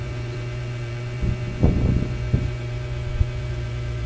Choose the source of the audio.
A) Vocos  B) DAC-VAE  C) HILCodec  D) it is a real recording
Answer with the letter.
A